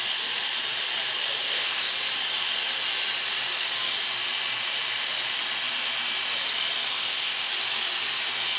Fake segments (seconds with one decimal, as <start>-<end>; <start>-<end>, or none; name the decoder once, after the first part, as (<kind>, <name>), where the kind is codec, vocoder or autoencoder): 1.4-1.9 (codec, ZipCodec); 6.9-7.5